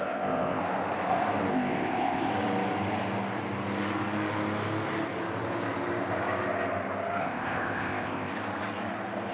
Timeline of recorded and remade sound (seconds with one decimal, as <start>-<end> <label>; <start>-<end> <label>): 0.0-0.6 remade; 0.6-1.5 recorded; 1.5-2.3 remade; 2.3-7.2 recorded; 7.2-8.3 remade; 8.3-9.3 recorded